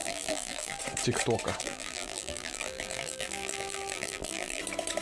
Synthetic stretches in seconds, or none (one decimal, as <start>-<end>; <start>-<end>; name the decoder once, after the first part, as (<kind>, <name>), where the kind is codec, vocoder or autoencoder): 0.0-0.8 (vocoder, BigVGAN v2); 1.6-4.6

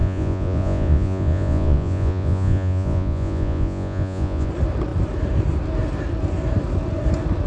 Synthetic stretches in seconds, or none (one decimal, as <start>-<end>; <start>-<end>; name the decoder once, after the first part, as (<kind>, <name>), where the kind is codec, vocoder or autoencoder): 0.0-4.5 (vocoder, Vocos)